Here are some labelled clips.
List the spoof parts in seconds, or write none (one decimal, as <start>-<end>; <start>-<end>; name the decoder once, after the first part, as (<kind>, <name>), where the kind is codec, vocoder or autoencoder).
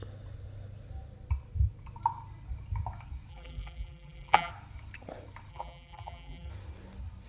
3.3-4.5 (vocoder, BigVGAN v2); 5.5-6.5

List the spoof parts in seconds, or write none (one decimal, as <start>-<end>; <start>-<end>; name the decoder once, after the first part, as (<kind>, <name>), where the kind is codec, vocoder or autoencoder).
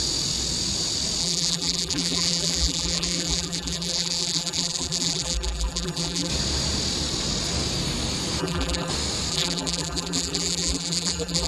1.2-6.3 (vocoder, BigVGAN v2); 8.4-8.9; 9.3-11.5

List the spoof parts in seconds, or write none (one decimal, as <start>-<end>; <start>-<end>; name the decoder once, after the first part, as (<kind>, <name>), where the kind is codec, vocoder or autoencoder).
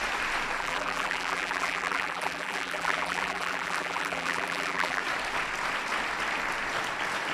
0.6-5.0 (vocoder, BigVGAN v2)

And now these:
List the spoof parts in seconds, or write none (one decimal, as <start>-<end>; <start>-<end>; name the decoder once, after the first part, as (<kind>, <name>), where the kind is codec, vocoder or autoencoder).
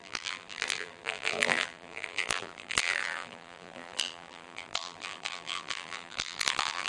0.0-6.9 (vocoder, BigVGAN v2)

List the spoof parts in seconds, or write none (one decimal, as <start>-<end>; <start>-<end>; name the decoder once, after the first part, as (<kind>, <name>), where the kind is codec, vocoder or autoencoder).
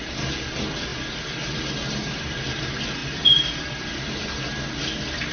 0.9-2.6 (vocoder, BigVGAN v2); 3.0-4.1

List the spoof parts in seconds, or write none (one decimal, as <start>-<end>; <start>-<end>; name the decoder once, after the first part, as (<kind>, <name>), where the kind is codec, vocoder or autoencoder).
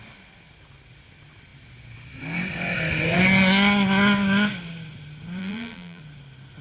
5.4-6.0 (vocoder, BigVGAN v2)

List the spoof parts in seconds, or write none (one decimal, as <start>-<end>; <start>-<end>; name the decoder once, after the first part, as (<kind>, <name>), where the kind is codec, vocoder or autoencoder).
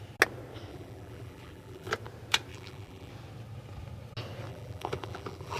0.7-1.9 (vocoder, BigVGAN v2); 2.5-3.1; 4.5-5.6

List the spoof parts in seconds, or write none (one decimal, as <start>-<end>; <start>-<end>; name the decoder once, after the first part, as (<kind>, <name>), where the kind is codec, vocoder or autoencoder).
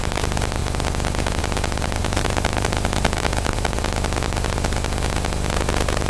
2.0-3.8 (vocoder, BigVGAN v2)